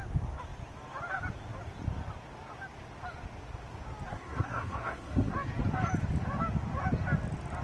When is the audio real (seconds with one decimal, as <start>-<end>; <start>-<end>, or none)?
0.0-4.1; 5.3-7.6